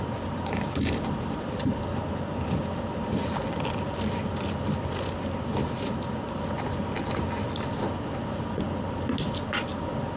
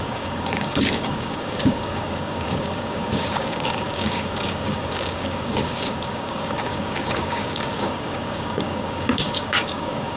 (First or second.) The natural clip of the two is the first